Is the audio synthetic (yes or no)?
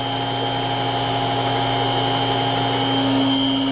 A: no